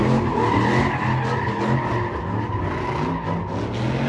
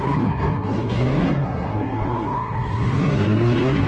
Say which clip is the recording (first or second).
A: first